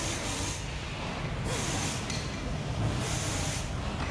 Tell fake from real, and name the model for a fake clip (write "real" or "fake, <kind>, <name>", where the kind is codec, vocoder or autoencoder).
real